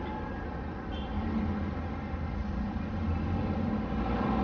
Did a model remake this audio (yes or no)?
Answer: no